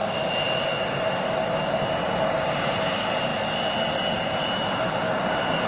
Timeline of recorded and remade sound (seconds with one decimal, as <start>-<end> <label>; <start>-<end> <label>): 0.0-5.7 remade